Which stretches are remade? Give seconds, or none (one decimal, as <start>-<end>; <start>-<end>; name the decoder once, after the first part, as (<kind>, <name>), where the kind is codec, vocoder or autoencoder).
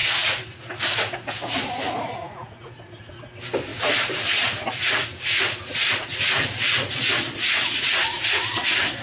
0.0-3.2 (vocoder, Vocos); 3.7-9.0